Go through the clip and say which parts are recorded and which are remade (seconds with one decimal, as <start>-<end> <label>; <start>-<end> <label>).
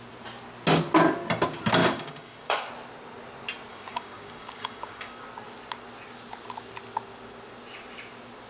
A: 0.0-1.8 recorded; 1.8-2.7 remade; 2.7-3.7 recorded; 3.7-5.2 remade; 5.2-8.5 recorded